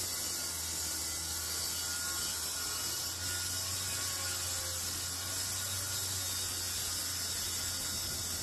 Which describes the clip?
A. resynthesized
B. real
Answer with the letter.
B